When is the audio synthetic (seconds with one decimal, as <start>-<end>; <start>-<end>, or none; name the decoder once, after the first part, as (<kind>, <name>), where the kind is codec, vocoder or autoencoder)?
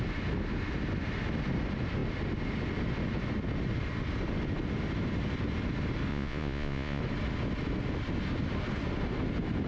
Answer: 6.1-7.0 (vocoder, Vocos)